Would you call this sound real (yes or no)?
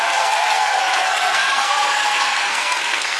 no